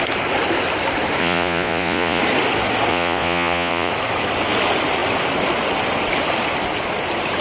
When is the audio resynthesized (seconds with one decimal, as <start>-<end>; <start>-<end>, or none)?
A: 1.2-2.2; 2.9-3.9